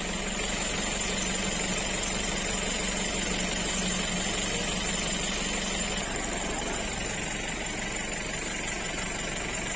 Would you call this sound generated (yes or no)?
no